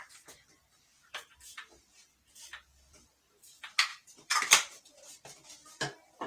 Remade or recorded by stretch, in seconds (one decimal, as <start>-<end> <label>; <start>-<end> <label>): 0.0-3.9 recorded; 3.9-4.8 remade; 4.8-6.3 recorded